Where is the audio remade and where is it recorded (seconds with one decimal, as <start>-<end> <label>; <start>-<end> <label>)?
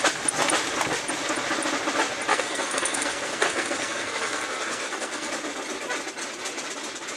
0.0-2.3 recorded; 2.3-5.3 remade; 5.3-7.2 recorded